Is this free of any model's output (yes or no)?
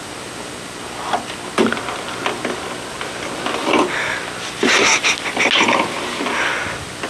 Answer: yes